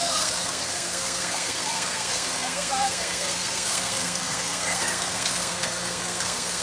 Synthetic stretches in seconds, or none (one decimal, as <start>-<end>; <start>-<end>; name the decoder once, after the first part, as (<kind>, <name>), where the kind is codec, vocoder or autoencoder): 0.0-6.6 (codec, SNAC)